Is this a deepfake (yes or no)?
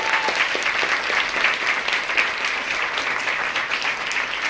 yes